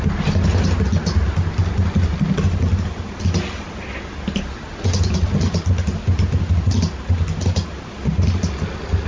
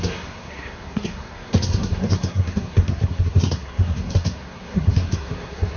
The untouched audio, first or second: first